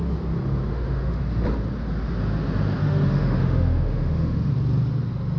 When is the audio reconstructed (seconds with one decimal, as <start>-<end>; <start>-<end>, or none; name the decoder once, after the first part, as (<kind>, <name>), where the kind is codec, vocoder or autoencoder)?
0.7-1.2 (autoencoder, DAC-VAE); 2.8-4.5